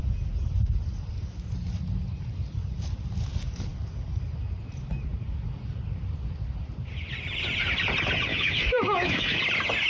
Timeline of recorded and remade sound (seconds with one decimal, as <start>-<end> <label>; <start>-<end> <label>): 0.0-8.3 recorded; 8.3-9.4 remade; 9.4-9.9 recorded